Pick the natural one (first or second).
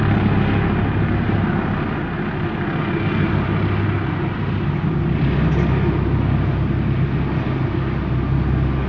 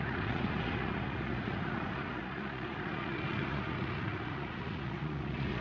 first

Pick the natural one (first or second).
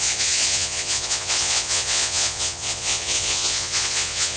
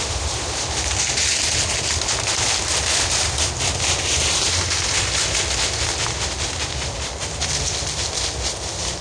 second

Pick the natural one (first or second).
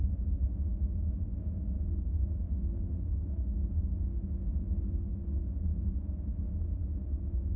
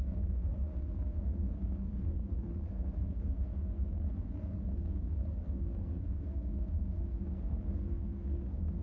first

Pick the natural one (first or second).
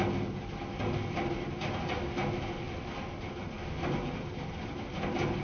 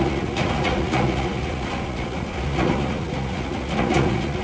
first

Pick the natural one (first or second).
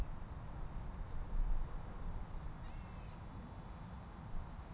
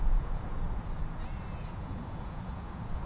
first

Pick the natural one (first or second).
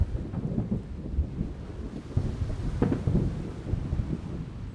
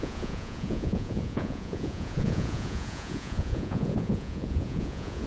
first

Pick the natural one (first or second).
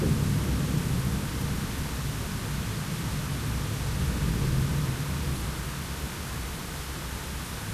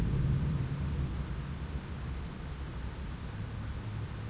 first